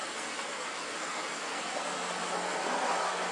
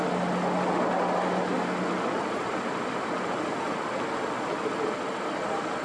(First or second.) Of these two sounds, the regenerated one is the first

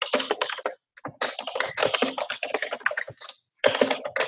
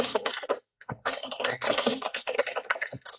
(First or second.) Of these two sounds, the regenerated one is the second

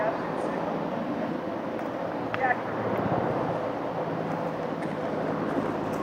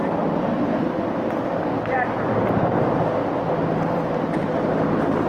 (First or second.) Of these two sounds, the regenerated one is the first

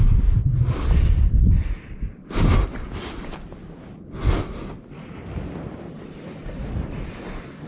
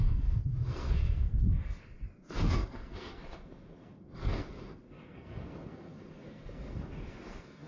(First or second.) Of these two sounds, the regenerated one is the second